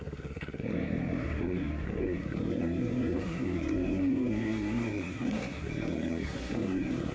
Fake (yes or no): yes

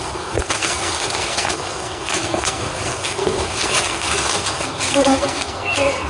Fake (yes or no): yes